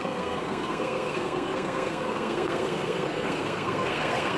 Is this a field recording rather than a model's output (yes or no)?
no